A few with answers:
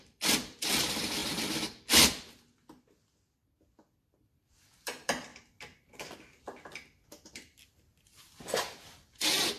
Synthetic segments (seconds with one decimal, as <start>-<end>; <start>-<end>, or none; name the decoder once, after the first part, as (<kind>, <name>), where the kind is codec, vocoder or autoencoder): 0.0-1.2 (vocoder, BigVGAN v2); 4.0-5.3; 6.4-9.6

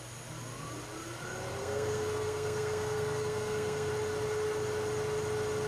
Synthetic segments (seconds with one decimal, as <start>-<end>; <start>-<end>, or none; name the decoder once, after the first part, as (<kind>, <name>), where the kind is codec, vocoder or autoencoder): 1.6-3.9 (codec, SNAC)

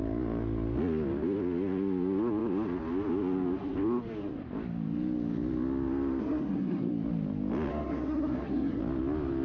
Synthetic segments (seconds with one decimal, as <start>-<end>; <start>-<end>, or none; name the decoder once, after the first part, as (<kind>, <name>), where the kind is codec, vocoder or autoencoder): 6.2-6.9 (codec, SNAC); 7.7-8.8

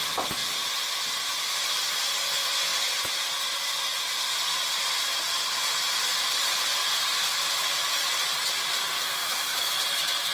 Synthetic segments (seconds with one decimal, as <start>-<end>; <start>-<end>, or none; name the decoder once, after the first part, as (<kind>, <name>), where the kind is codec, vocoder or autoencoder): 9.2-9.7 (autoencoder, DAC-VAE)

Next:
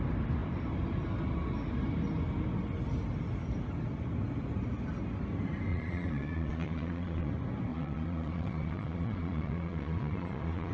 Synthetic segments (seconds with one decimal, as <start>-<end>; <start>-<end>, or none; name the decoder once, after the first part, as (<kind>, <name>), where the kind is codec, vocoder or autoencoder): 5.7-7.3 (vocoder, Vocos); 7.7-10.7

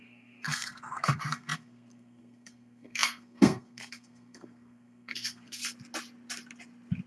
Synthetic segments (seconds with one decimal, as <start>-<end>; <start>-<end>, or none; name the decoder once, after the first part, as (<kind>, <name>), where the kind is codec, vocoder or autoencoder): 0.0-5.6 (codec, SNAC)

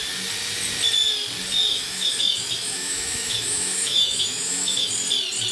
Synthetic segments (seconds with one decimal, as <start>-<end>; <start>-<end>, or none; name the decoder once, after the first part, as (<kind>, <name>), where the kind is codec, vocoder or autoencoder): 1.7-4.9 (autoencoder, DAC-VAE)

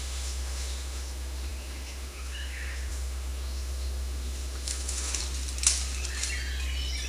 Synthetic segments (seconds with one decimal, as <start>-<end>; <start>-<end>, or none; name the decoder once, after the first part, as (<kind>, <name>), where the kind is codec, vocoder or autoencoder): 0.0-5.2 (autoencoder, DAC-VAE)